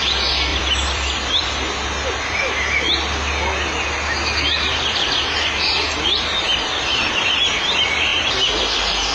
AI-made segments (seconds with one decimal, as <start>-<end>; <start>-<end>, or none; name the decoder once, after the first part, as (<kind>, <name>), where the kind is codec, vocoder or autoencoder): 0.5-1.4 (vocoder, BigVGAN v2); 6.5-7.4